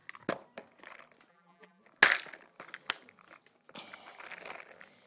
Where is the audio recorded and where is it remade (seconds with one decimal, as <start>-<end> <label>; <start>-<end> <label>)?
0.0-1.3 recorded; 1.3-1.8 remade; 1.8-5.1 recorded